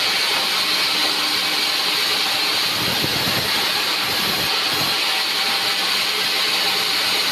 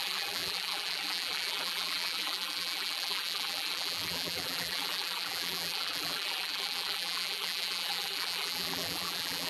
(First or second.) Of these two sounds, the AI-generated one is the second